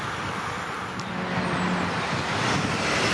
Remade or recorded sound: recorded